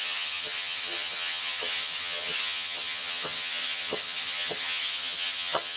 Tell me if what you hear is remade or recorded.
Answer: remade